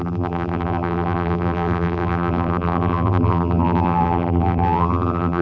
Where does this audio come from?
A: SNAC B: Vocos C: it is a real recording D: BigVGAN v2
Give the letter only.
D